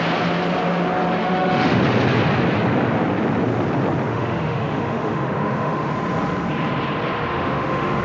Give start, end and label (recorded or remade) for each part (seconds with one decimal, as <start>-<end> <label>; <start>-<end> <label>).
0.0-1.2 recorded; 1.2-1.8 remade; 1.8-4.1 recorded; 4.1-5.9 remade; 5.9-7.3 recorded; 7.3-8.0 remade